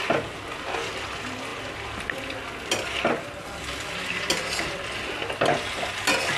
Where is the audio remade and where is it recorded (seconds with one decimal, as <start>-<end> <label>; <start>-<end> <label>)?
0.0-6.4 recorded